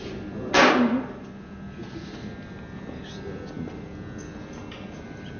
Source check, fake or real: real